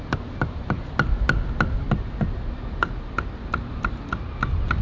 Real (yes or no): yes